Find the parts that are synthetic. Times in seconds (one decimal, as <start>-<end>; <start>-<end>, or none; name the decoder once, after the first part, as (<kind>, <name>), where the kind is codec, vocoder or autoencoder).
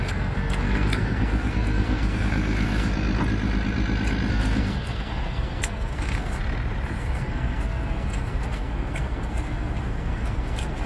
0.0-2.9 (codec, SNAC); 4.3-6.4; 7.0-10.9